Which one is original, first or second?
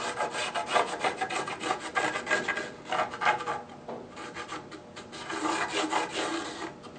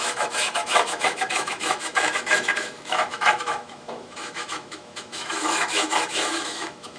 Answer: first